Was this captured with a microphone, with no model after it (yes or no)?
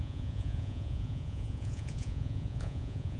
no